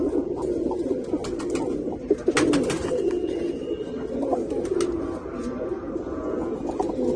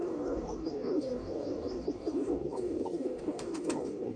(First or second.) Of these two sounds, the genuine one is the first